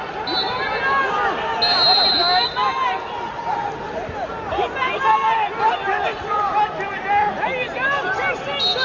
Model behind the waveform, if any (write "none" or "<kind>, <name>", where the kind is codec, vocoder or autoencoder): none